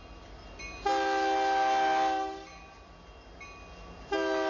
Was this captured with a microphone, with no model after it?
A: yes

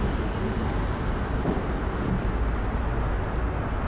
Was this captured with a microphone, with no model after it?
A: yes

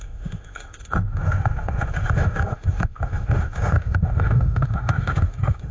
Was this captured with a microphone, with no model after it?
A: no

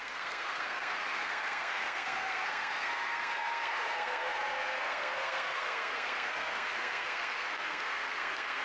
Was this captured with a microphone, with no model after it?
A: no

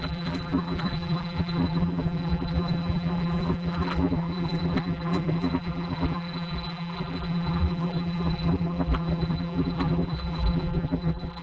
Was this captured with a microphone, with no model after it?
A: no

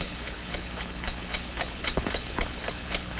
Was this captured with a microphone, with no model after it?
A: no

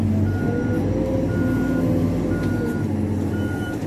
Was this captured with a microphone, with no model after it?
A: yes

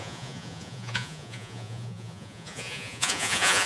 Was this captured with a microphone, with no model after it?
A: no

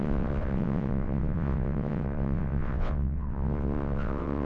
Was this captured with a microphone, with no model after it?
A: no